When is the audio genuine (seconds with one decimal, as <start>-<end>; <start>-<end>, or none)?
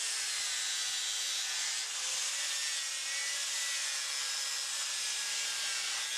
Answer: 0.0-6.2